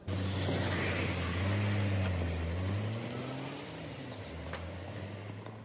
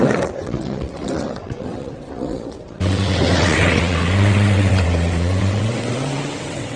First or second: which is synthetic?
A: second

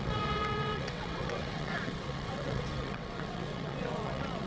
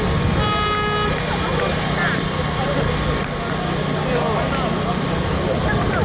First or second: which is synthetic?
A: first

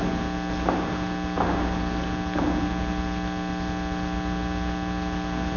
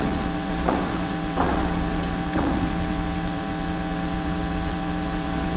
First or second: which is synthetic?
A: second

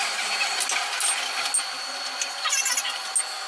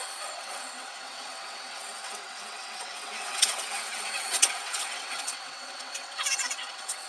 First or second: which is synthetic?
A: second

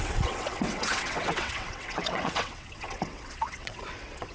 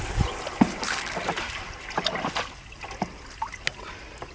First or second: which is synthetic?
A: first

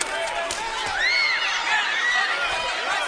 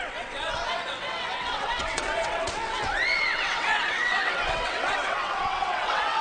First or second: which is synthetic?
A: second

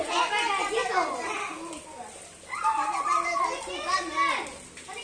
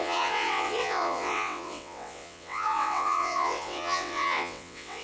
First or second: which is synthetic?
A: second